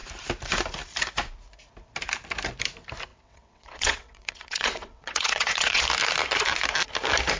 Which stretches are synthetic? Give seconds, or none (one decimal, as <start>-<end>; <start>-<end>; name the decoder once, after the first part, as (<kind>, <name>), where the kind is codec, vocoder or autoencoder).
3.1-5.8 (vocoder, WaveNeXt)